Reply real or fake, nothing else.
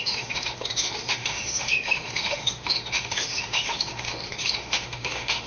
fake